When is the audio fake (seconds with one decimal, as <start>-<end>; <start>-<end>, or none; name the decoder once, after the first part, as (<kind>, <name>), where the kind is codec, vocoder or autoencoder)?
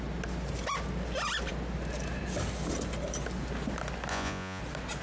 4.1-4.6 (vocoder, Vocos)